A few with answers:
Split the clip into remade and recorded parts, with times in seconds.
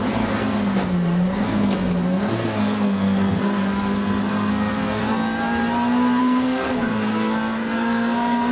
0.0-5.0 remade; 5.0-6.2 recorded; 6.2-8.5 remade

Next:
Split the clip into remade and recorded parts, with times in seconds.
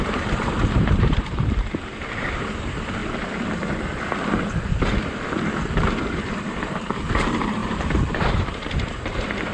0.0-3.0 remade; 3.0-5.9 recorded; 5.9-9.5 remade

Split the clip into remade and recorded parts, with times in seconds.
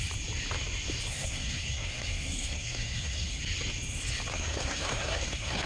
0.0-1.1 recorded; 1.1-3.4 remade; 3.4-4.3 recorded; 4.3-5.7 remade